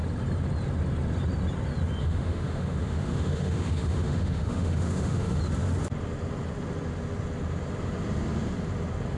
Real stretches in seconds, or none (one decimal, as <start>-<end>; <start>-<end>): 0.0-2.0; 5.4-9.2